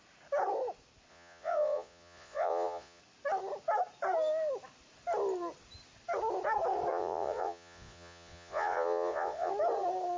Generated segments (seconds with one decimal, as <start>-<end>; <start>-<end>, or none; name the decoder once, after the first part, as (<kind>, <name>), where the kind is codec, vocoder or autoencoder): 1.1-3.0 (vocoder, Vocos); 6.9-9.5